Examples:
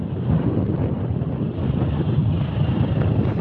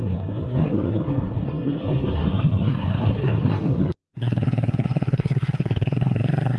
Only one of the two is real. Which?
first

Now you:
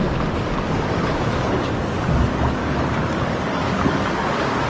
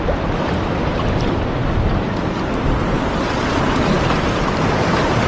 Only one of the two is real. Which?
second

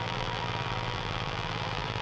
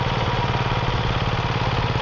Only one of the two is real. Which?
second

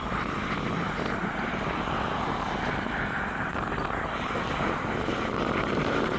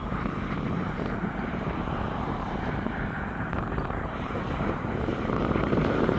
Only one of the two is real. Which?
first